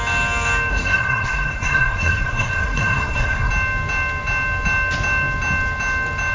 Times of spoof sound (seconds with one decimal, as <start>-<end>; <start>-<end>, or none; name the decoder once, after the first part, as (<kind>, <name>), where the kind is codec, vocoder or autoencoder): 0.7-3.5 (codec, SNAC)